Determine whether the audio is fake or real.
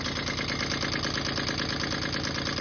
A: real